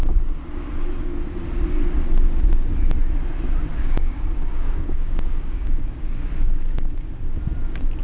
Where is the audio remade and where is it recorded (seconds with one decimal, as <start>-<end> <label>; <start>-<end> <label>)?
0.0-3.7 recorded; 3.7-6.3 remade; 6.3-8.0 recorded